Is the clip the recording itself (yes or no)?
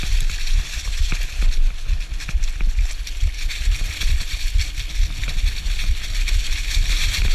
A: yes